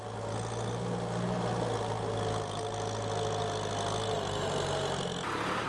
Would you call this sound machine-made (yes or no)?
no